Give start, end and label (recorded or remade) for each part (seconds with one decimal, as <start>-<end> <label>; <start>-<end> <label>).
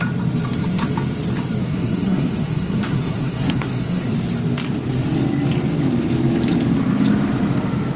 0.0-1.6 recorded; 1.6-4.1 remade; 4.1-8.0 recorded